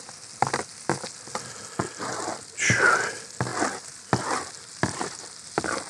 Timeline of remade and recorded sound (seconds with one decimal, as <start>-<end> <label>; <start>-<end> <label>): 0.0-5.9 recorded